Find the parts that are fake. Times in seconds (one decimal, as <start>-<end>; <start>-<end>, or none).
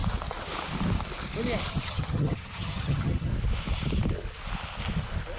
1.7-3.3